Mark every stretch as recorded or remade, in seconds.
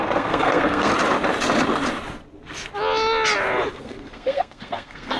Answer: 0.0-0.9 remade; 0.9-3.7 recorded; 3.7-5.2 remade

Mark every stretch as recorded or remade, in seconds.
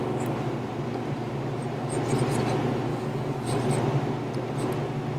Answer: 0.0-2.9 recorded; 2.9-3.6 remade; 3.6-5.2 recorded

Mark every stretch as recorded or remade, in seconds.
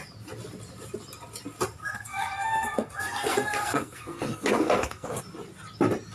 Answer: 0.0-1.8 recorded; 1.8-5.2 remade; 5.2-6.1 recorded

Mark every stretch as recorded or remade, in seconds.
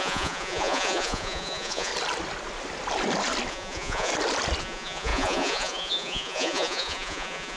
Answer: 0.0-1.9 remade; 1.9-3.5 recorded; 3.5-4.1 remade; 4.1-4.6 recorded; 4.6-7.6 remade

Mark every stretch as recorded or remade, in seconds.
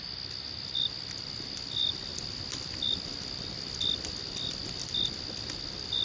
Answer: 0.0-6.0 recorded